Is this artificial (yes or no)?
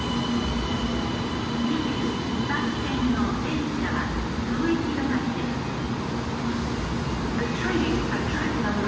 no